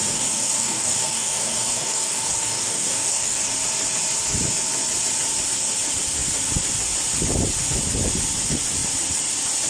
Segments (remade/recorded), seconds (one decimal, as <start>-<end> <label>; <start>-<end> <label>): 0.0-3.5 remade; 3.5-9.7 recorded

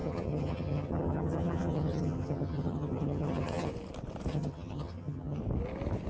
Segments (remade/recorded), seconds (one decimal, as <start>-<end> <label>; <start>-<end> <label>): 0.0-3.7 remade; 3.7-4.3 recorded; 4.3-5.4 remade; 5.4-6.1 recorded

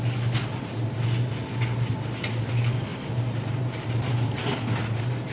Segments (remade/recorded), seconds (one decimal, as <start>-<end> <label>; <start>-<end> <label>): 0.0-5.3 recorded

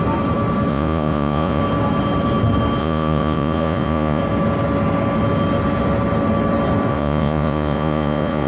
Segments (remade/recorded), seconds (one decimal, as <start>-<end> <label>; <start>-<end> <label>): 0.0-0.7 recorded; 0.7-1.6 remade; 1.6-2.8 recorded; 2.8-4.2 remade; 4.2-6.9 recorded; 6.9-8.5 remade